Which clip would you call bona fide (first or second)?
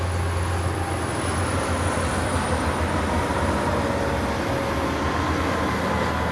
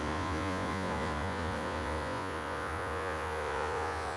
first